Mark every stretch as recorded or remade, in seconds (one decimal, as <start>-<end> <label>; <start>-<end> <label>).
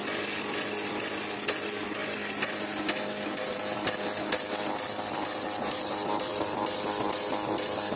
0.0-8.0 recorded